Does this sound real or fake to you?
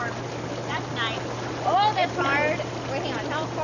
real